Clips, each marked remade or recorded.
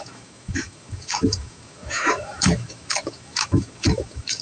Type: remade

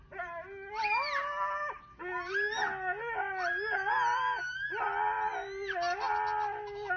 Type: recorded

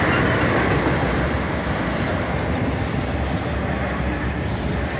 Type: recorded